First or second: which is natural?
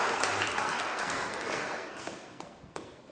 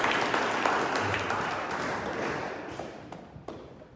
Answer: second